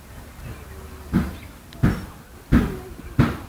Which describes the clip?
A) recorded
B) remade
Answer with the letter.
A